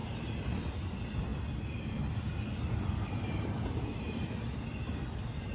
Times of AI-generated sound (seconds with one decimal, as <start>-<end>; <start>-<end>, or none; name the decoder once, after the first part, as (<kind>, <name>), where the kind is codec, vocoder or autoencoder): none